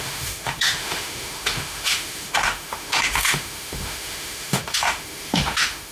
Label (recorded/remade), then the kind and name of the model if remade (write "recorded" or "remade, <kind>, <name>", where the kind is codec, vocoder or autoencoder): remade, autoencoder, DAC-VAE